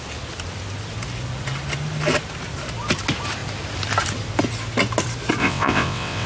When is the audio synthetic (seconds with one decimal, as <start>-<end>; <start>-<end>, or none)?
5.4-6.3